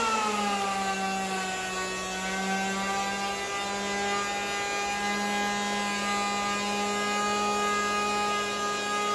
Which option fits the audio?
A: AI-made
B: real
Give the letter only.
B